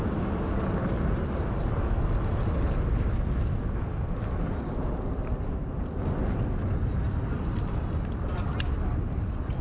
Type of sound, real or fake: real